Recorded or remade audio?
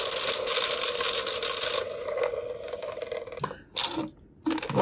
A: recorded